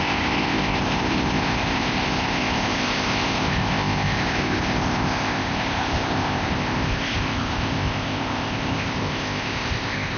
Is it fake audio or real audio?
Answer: fake